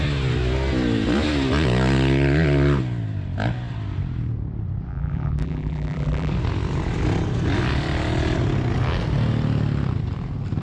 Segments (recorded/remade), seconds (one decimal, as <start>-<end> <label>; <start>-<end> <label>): 0.0-4.9 recorded; 4.9-6.3 remade; 6.3-10.6 recorded